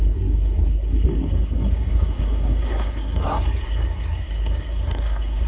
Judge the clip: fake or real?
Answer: fake